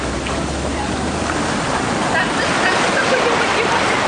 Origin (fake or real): real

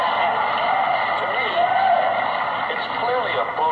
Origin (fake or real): real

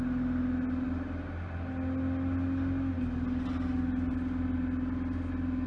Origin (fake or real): real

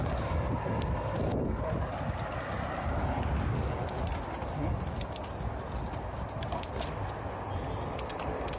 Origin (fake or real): real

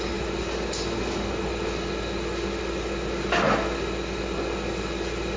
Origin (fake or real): real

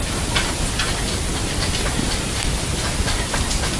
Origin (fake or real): real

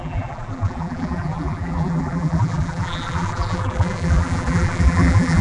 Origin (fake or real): fake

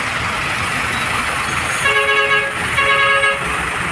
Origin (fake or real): real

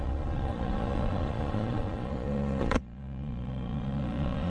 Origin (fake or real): fake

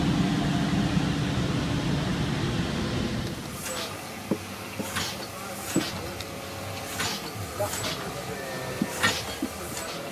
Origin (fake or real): real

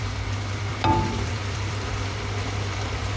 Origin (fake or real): fake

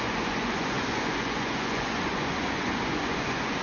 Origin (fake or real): fake